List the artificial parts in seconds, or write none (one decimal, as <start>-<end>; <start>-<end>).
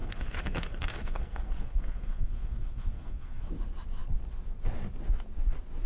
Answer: 0.0-3.5